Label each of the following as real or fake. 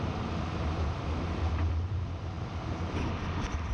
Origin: fake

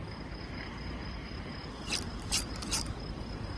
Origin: real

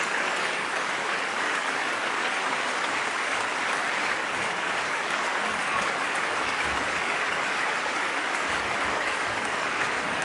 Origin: fake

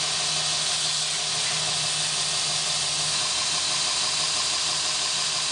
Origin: real